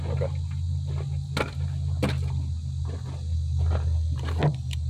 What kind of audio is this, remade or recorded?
recorded